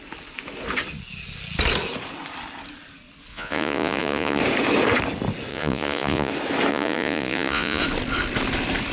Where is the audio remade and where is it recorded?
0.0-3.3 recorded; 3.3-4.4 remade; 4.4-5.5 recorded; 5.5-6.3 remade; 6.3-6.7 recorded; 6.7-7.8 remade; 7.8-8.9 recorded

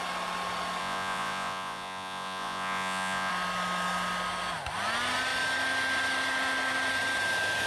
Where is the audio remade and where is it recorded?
0.0-0.8 recorded; 0.8-3.3 remade; 3.3-7.7 recorded